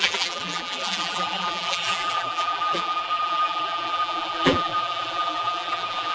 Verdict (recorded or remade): remade